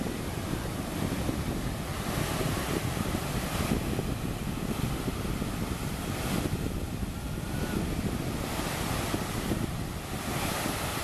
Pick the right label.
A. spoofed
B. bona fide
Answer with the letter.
B